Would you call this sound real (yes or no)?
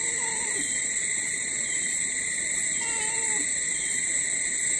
yes